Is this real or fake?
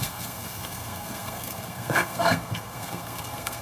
fake